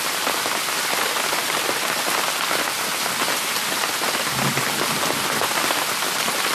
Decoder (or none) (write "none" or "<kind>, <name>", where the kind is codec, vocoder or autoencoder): none